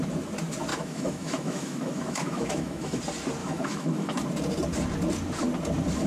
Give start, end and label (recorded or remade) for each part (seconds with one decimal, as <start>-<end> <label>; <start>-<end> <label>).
0.0-0.7 recorded; 0.7-3.0 remade; 3.0-3.4 recorded; 3.4-4.2 remade; 4.2-6.1 recorded